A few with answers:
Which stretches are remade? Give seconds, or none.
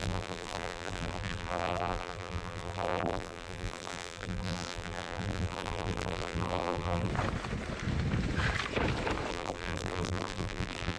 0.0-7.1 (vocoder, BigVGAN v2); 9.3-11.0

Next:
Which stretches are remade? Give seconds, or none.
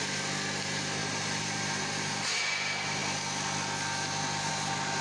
1.0-2.4 (vocoder, BigVGAN v2)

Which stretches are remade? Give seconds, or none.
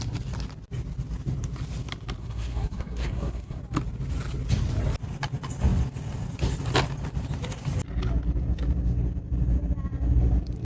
2.2-3.6 (codec, SNAC)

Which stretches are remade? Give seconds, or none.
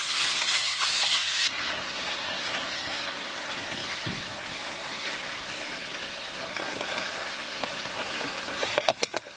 0.0-9.4 (codec, SNAC)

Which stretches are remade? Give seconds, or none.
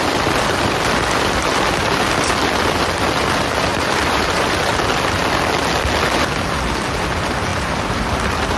3.7-4.6 (vocoder, BigVGAN v2); 7.5-8.1